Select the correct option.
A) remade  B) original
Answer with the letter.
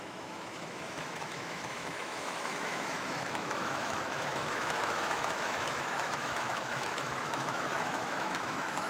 A